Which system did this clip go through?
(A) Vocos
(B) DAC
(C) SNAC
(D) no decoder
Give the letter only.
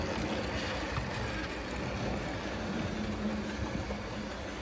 D